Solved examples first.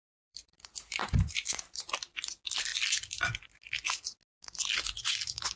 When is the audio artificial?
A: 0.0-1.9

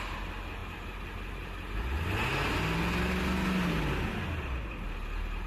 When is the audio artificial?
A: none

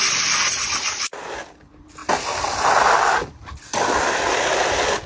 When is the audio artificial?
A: 2.0-5.1